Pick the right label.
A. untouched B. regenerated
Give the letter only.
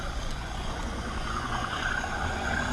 B